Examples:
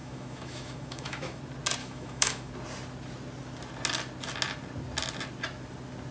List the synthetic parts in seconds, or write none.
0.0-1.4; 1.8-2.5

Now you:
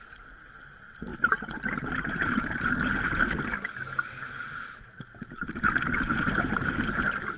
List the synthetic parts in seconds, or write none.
1.1-2.7

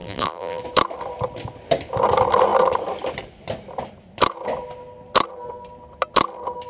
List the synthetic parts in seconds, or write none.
0.0-0.6

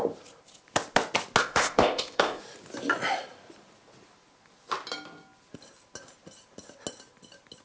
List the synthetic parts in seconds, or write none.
1.4-2.4

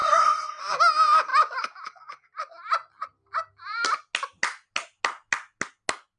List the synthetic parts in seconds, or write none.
0.0-0.6

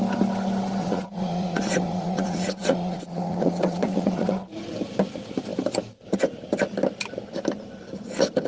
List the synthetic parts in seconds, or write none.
0.8-4.7